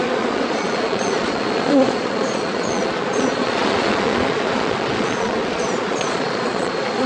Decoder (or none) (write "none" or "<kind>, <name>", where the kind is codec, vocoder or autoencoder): vocoder, Vocos